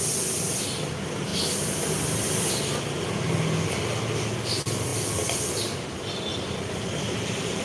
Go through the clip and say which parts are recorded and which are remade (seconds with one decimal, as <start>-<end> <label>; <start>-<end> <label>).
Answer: 0.0-1.3 recorded; 1.3-3.0 remade; 3.0-7.6 recorded